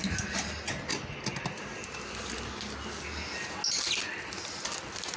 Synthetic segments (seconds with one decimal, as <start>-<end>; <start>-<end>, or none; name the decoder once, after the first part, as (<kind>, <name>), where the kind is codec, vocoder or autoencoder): none